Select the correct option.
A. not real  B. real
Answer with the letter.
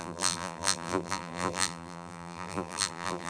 A